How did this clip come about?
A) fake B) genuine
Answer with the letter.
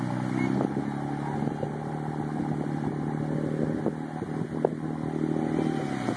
B